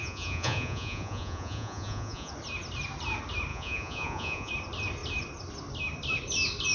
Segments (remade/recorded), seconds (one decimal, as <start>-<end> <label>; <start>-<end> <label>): 0.0-2.3 remade; 2.3-3.5 recorded; 3.5-4.5 remade; 4.5-6.7 recorded